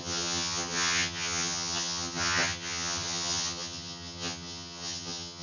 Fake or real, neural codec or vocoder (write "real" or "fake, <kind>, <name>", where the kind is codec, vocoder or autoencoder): fake, vocoder, HiFi-GAN